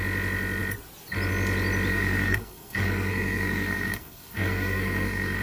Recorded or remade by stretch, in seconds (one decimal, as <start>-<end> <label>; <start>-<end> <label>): 0.0-1.9 recorded; 1.9-5.4 remade